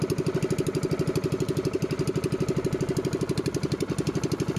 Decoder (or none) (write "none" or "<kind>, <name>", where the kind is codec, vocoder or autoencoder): none